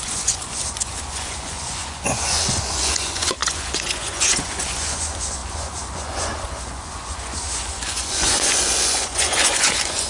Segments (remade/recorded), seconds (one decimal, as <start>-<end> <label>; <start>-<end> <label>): 0.0-10.1 remade